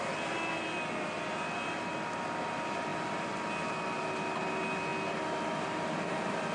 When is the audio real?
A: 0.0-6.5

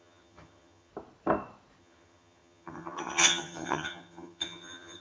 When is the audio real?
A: 0.9-1.8

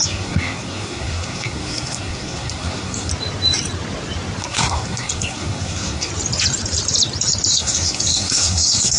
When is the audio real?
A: 3.1-4.4; 6.1-7.5

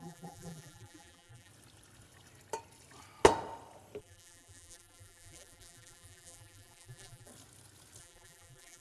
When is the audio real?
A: 1.5-4.0; 7.3-8.0

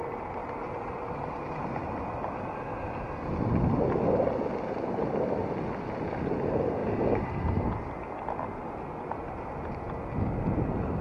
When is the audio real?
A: 0.0-11.0

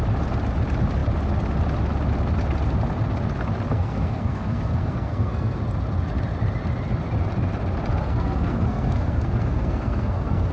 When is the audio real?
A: 0.0-3.7; 5.6-7.9

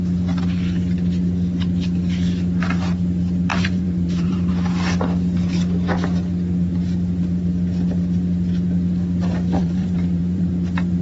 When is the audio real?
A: 0.0-3.5; 4.5-9.6; 10.5-11.0

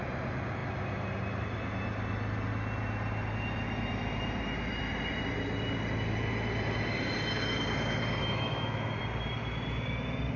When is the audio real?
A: 0.0-8.2; 9.0-10.4